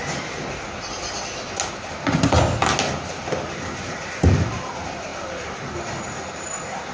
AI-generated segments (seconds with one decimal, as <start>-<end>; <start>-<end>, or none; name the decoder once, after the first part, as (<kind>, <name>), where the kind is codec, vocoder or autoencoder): none